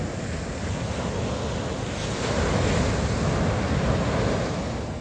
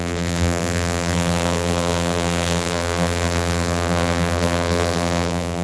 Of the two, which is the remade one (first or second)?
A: second